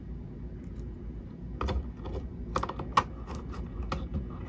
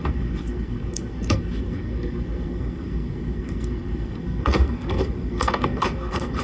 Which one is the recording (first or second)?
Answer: first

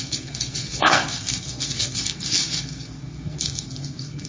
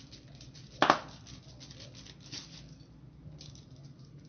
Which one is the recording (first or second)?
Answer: second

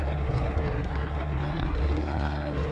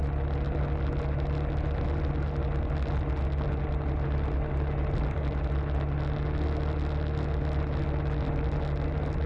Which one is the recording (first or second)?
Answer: second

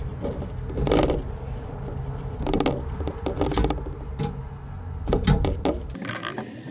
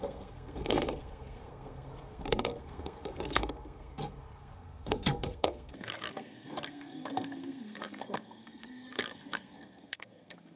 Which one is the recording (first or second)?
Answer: first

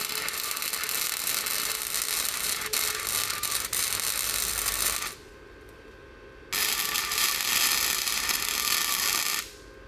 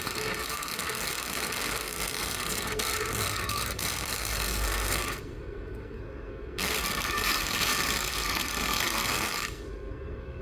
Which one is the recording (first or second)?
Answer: first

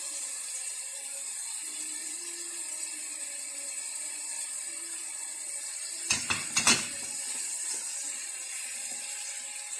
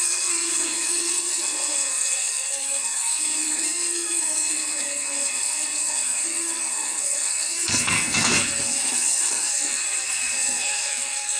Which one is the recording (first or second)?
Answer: first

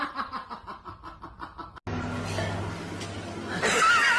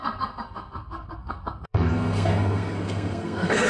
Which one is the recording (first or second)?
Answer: first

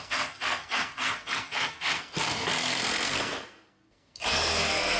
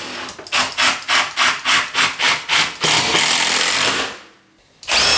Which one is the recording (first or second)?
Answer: second